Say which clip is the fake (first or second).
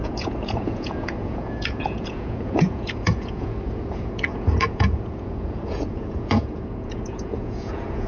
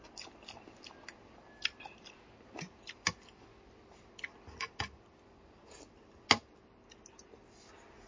first